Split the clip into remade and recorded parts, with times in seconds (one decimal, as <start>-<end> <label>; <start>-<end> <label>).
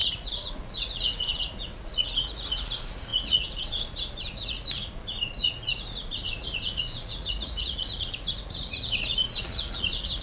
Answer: 0.0-10.2 remade